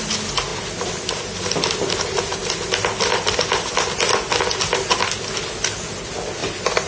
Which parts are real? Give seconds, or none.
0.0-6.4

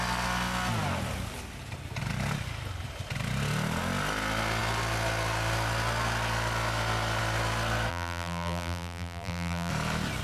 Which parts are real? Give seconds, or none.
0.0-7.9; 9.7-10.2

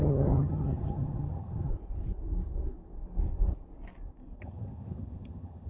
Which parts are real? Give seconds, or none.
1.7-4.4

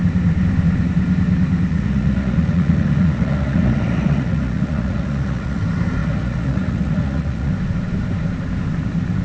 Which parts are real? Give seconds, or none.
0.0-1.7; 5.6-6.0; 7.5-9.2

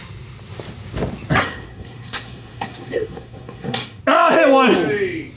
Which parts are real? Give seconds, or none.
0.0-1.4; 4.0-5.4

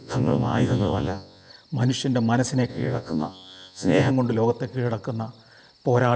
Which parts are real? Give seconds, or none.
1.5-2.7; 4.1-6.2